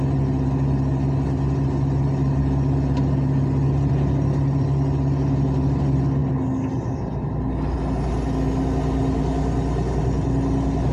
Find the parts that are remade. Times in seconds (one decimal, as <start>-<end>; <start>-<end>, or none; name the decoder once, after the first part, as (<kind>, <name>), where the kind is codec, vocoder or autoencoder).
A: none